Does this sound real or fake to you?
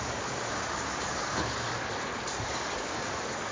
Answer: fake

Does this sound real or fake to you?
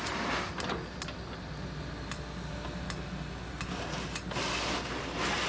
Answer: real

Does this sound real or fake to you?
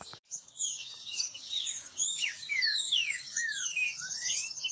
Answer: fake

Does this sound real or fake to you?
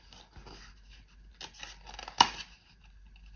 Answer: real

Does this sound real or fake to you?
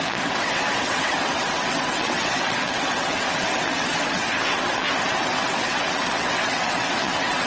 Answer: fake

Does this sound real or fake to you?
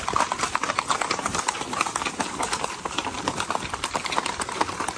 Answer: real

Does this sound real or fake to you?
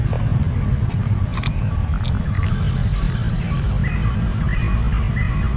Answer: real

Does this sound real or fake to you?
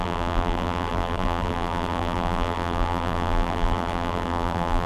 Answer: fake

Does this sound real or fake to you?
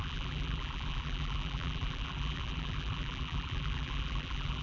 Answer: fake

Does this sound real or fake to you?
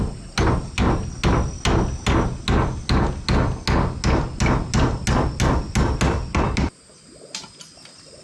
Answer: real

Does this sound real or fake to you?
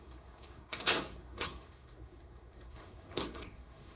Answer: fake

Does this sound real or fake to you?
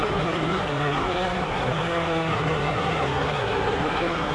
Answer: fake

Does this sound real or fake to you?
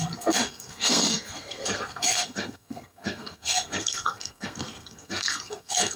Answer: fake